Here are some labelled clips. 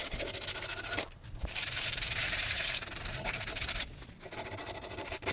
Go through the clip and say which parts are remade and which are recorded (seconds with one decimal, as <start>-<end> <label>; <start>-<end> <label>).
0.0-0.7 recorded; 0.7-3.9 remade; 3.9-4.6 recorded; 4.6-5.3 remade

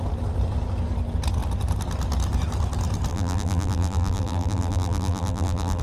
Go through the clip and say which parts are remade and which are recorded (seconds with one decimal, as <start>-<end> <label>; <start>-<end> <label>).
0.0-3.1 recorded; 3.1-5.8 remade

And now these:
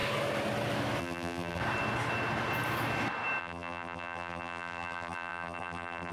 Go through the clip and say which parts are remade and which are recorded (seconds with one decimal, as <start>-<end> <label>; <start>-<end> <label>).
0.0-1.0 recorded; 1.0-1.6 remade; 1.6-3.4 recorded; 3.4-6.1 remade

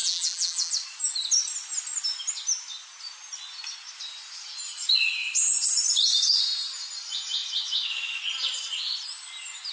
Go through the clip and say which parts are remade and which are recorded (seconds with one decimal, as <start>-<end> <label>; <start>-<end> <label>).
0.0-0.7 remade; 0.7-9.7 recorded